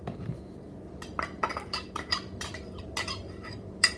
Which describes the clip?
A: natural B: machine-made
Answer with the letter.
A